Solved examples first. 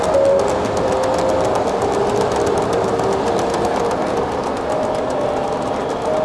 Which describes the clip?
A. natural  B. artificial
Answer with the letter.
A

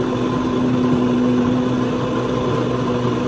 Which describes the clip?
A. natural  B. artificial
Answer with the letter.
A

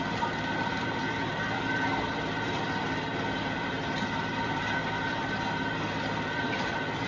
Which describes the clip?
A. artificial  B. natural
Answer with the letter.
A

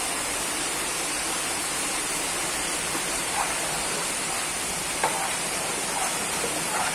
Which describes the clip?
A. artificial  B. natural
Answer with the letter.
A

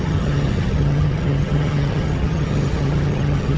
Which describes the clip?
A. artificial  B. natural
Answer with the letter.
A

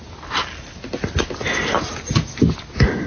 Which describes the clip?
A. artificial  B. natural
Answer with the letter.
B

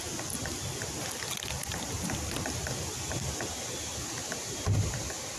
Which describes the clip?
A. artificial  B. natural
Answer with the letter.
B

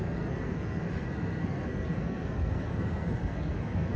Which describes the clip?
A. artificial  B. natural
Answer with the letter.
A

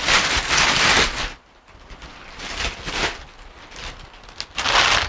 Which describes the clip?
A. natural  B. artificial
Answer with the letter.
A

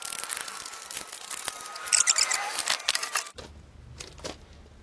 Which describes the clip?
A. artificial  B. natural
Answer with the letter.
B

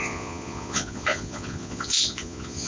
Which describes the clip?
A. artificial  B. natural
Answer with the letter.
A